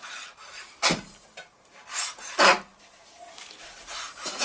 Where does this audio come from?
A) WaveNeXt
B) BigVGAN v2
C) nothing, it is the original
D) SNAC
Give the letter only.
B